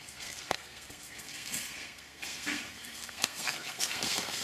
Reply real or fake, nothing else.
fake